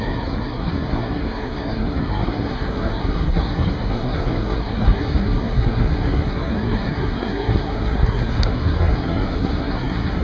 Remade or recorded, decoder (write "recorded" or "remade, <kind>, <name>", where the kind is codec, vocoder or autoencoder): remade, codec, SNAC